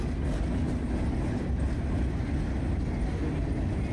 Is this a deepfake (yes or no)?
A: no